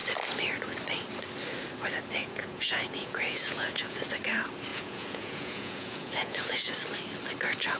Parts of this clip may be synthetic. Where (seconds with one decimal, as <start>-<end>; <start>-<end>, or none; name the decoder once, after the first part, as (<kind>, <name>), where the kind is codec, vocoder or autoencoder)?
2.2-4.0 (vocoder, Vocos); 4.7-6.7

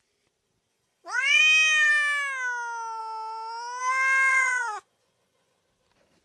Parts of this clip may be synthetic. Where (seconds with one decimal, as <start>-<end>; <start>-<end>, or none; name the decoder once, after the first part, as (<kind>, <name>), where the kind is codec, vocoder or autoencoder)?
0.7-1.4 (vocoder, Vocos); 4.3-5.6

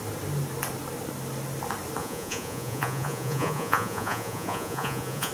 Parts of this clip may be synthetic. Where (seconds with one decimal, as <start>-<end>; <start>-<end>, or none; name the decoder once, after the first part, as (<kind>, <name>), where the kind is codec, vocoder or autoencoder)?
2.0-5.3 (vocoder, Vocos)

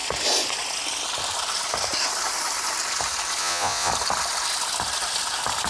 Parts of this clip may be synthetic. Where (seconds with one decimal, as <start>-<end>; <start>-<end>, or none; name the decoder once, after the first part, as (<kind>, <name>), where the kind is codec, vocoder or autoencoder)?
3.4-3.9 (vocoder, Vocos)

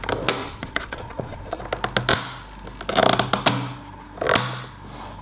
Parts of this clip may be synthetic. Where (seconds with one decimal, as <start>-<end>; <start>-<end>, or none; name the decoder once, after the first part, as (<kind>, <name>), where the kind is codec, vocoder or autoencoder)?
0.4-1.6 (vocoder, Vocos)

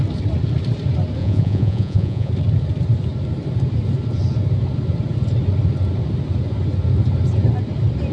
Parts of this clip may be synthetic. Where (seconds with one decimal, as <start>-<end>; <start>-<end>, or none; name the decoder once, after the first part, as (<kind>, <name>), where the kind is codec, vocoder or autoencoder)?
1.2-2.3 (vocoder, Vocos)